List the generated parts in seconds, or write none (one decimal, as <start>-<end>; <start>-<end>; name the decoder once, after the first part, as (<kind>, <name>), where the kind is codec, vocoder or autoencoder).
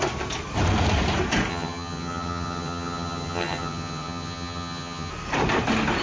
1.5-5.1 (vocoder, HiFi-GAN)